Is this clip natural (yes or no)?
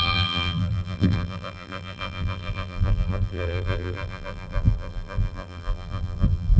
no